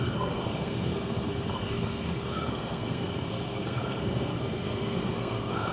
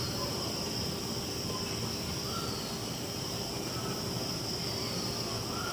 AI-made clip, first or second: first